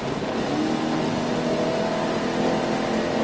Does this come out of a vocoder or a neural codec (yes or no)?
no